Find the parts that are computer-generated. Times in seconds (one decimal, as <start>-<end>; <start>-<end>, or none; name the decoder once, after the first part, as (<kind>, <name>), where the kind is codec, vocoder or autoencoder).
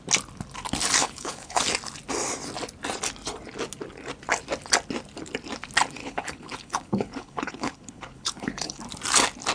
1.0-1.6 (codec, HILCodec); 6.0-8.8